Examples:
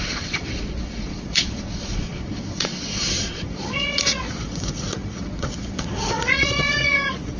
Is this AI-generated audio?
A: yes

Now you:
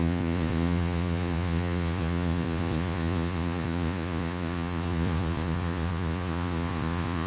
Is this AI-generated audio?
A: yes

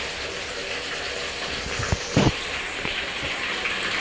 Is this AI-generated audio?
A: no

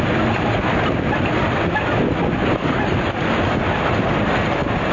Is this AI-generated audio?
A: no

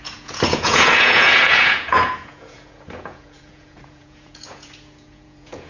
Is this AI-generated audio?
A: yes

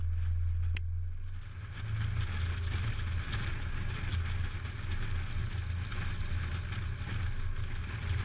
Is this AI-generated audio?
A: no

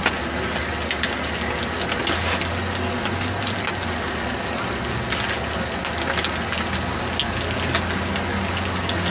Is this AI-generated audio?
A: no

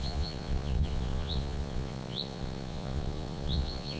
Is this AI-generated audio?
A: yes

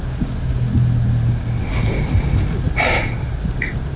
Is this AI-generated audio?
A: no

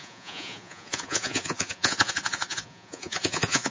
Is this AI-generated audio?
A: yes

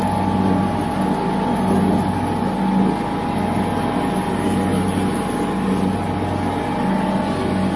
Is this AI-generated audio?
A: no